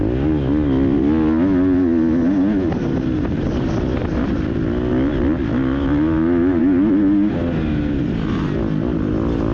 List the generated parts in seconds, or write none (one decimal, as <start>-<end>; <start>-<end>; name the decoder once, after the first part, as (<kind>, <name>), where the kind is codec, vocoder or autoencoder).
5.5-6.6 (autoencoder, DAC-VAE)